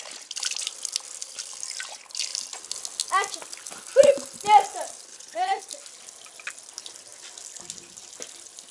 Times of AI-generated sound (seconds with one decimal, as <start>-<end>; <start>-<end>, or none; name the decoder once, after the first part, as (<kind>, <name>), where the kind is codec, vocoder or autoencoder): 5.1-5.6 (codec, HILCodec)